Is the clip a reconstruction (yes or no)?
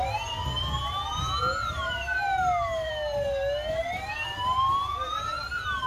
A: no